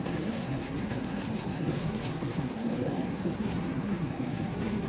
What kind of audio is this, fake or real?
fake